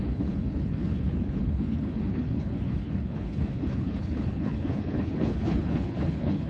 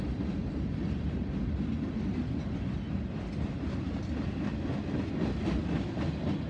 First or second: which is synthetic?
first